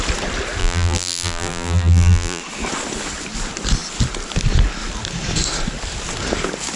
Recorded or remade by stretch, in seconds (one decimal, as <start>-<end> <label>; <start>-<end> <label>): 0.0-0.6 recorded; 0.6-2.4 remade; 2.4-6.8 recorded